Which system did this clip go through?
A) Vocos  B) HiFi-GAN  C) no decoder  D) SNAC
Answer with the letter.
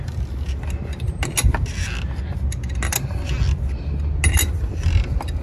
C